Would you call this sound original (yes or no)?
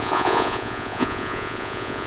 no